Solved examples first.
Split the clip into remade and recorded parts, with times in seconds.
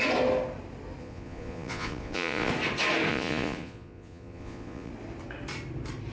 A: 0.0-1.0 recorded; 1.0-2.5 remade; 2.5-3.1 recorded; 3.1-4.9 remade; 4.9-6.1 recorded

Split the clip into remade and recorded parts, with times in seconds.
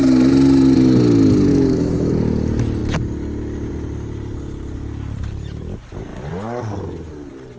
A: 0.0-1.5 recorded; 1.5-2.1 remade; 2.1-7.6 recorded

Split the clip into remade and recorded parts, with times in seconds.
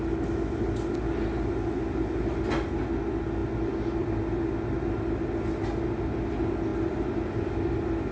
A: 0.0-8.1 recorded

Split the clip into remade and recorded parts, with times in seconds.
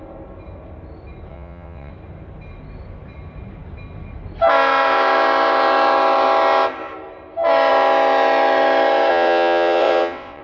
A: 0.0-1.3 recorded; 1.3-1.9 remade; 1.9-9.1 recorded; 9.1-10.4 remade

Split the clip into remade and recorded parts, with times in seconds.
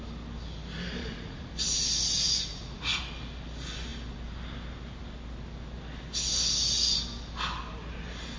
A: 0.0-1.0 recorded; 1.0-1.5 remade; 1.5-2.5 recorded; 2.5-3.0 remade; 3.0-8.4 recorded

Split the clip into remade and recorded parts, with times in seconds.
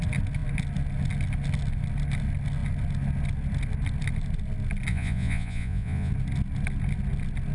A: 0.0-4.9 recorded; 4.9-6.1 remade; 6.1-7.5 recorded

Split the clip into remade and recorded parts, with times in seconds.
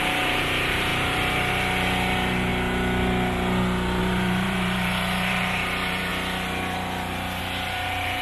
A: 0.0-2.5 remade; 2.5-4.0 recorded; 4.0-6.1 remade; 6.1-7.4 recorded; 7.4-8.2 remade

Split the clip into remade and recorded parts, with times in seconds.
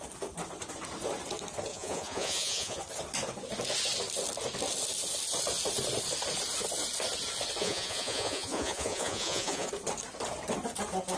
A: 0.0-1.7 recorded; 1.7-2.8 remade; 2.8-7.6 recorded; 7.6-9.7 remade; 9.7-11.2 recorded